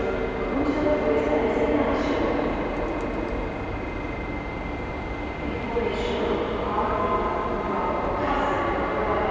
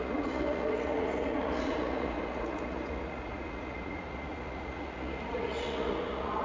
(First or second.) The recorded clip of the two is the first